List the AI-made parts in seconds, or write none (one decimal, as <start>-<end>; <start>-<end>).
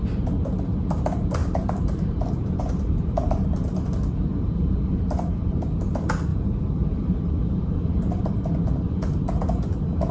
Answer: 1.4-2.6; 6.3-8.2